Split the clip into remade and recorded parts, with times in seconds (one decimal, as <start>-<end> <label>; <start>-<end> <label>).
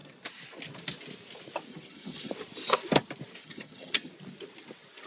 0.0-1.7 recorded; 1.7-2.3 remade; 2.3-3.4 recorded; 3.4-4.1 remade; 4.1-5.1 recorded